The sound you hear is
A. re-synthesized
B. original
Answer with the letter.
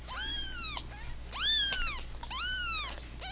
B